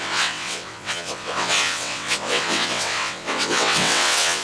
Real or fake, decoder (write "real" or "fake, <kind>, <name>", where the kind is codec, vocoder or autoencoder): fake, vocoder, WaveNeXt